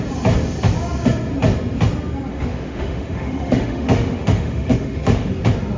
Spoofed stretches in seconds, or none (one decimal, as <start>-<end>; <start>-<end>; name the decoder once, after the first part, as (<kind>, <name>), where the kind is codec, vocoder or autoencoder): 2.3-5.3 (autoencoder, DAC-VAE)